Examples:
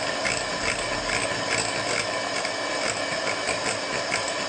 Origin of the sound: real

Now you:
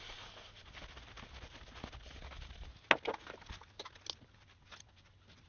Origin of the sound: real